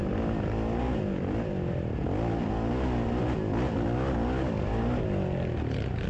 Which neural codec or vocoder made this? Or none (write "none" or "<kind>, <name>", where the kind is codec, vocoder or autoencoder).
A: none